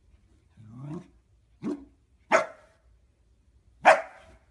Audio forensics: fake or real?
real